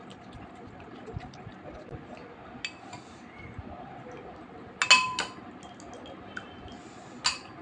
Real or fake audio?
real